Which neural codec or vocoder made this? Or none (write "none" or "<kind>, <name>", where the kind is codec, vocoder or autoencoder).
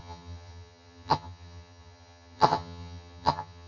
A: vocoder, HiFi-GAN